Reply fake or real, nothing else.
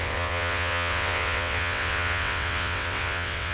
fake